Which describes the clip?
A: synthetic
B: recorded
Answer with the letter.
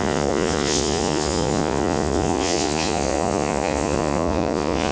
A